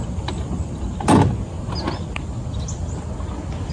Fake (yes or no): no